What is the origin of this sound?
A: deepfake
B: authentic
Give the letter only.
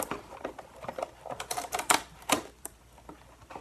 A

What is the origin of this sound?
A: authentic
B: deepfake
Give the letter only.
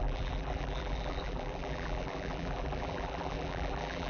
B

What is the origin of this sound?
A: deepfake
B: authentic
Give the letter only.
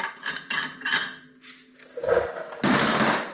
B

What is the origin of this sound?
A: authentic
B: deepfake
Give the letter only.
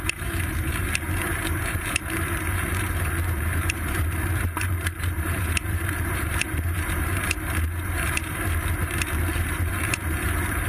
B